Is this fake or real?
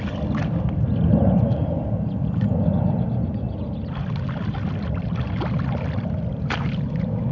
real